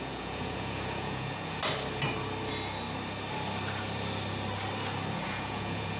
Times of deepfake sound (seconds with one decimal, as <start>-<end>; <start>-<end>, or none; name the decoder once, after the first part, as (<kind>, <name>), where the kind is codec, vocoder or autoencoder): 0.0-1.6 (vocoder, Vocos); 5.1-6.0